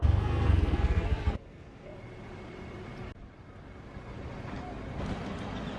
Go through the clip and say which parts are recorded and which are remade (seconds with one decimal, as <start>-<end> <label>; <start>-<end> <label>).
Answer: 0.0-1.9 remade; 1.9-5.8 recorded